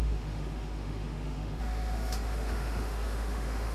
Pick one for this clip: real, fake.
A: fake